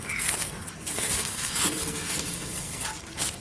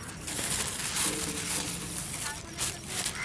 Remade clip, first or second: first